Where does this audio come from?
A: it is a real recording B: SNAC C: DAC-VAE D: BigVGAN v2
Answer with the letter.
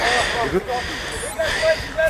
A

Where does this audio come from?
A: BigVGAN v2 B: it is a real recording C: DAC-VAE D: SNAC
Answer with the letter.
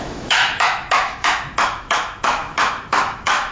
C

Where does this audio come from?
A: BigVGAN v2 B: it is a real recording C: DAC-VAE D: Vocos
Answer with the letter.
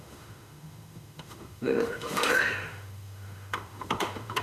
C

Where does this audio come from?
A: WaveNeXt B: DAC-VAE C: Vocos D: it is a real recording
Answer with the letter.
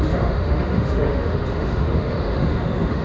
B